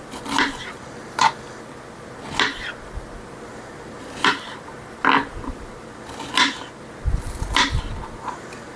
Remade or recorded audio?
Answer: recorded